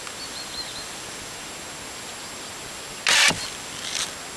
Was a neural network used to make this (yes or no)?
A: no